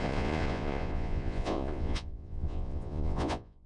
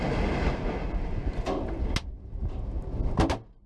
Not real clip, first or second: first